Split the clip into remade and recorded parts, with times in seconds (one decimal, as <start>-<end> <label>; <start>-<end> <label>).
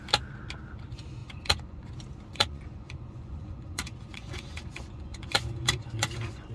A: 0.0-1.2 recorded; 1.2-1.9 remade; 1.9-2.3 recorded; 2.3-6.5 remade